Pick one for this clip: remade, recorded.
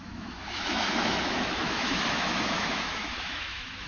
remade